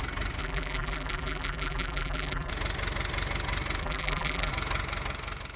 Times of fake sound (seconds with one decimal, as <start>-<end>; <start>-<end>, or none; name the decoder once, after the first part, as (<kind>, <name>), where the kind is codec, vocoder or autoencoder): 0.4-2.5 (vocoder, BigVGAN v2); 3.8-4.5